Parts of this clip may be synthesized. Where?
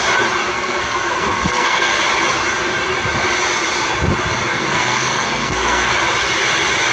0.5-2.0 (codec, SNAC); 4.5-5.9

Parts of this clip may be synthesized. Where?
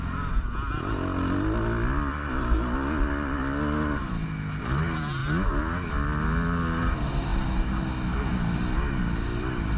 none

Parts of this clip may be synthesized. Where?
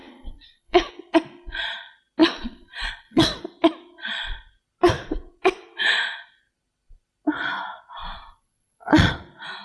0.0-0.9 (vocoder, Vocos); 2.2-3.4; 8.0-9.1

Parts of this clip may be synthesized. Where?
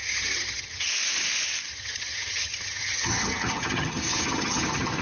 0.0-0.9 (vocoder, HiFi-GAN); 1.7-5.0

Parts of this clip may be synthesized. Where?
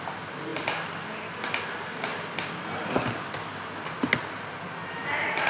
none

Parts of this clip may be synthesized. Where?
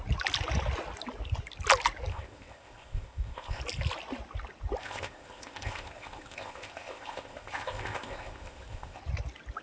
2.1-3.6 (codec, ZipCodec); 4.8-9.0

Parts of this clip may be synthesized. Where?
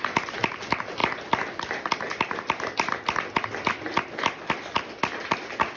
none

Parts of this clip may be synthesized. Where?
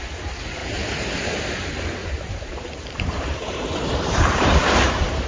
0.6-1.4 (vocoder, BigVGAN v2); 2.0-5.3